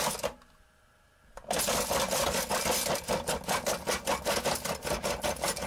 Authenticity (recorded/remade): recorded